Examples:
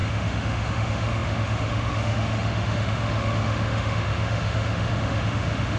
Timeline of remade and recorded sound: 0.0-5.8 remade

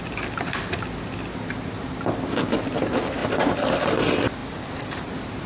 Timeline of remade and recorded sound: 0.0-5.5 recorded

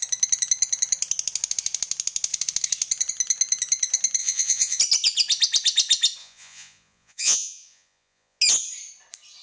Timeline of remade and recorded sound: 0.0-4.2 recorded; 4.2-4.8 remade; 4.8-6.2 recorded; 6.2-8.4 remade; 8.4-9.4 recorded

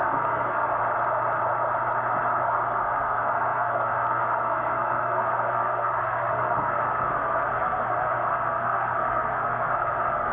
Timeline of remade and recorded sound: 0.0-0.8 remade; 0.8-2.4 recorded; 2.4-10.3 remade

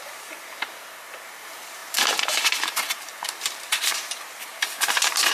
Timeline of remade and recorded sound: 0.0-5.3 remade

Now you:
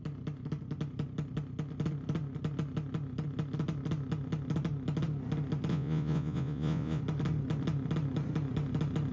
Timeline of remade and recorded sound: 0.0-5.7 recorded; 5.7-7.0 remade; 7.0-9.1 recorded

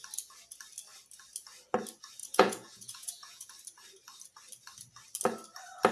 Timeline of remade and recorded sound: 0.0-2.2 recorded; 2.2-3.5 remade; 3.5-5.9 recorded